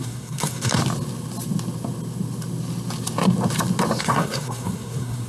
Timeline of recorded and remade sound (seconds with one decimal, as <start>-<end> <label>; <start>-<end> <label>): 0.0-0.8 remade; 0.8-4.0 recorded; 4.0-5.3 remade